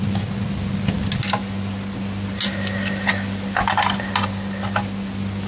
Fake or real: real